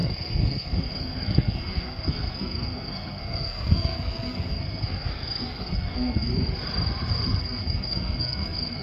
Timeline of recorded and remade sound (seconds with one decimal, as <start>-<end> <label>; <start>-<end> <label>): 0.0-6.3 remade; 6.3-7.4 recorded; 7.4-8.8 remade